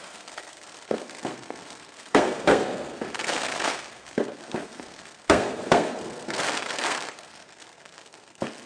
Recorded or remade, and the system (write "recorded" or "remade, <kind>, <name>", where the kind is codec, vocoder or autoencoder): remade, codec, SNAC